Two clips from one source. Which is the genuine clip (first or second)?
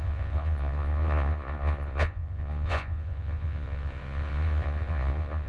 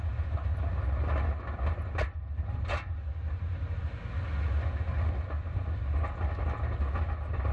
second